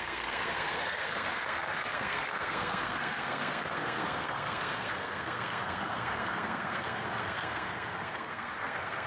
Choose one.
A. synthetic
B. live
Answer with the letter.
A